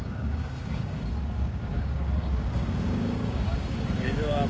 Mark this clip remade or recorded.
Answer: remade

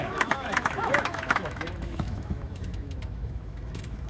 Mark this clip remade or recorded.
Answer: remade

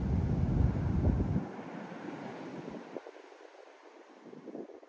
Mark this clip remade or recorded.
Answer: recorded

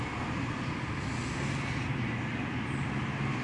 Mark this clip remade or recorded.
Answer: recorded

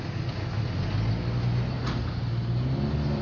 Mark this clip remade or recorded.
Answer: recorded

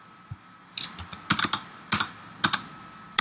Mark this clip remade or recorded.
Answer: recorded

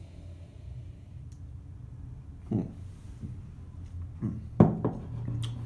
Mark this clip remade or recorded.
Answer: recorded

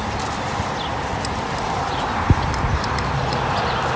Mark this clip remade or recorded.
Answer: recorded